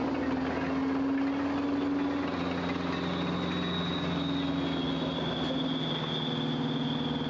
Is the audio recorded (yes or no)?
yes